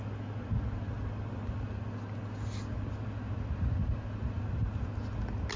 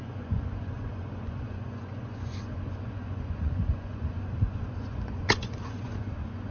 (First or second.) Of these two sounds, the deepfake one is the second